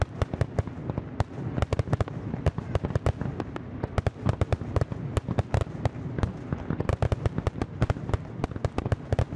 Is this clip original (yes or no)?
yes